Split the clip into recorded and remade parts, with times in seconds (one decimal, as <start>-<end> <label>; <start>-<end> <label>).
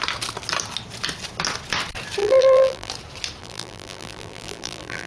0.0-2.2 recorded; 2.2-2.9 remade; 2.9-3.4 recorded; 3.4-5.1 remade